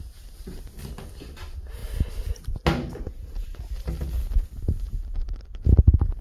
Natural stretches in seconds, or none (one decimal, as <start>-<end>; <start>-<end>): 0.0-6.2